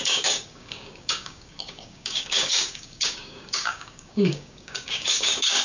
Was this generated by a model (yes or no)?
yes